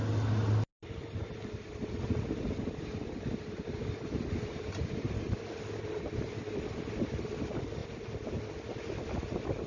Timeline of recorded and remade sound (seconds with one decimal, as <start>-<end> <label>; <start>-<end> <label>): 0.0-9.7 recorded